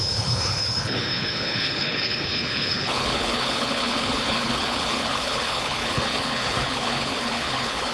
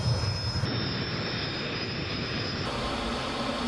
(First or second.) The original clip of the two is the second